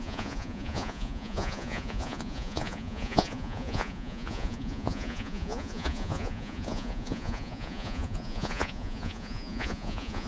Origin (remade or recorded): remade